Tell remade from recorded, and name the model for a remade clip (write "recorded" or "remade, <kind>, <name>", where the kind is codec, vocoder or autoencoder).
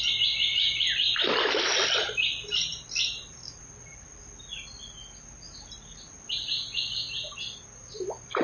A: recorded